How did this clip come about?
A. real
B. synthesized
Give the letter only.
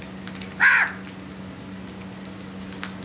A